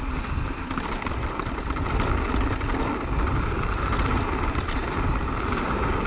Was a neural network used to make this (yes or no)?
no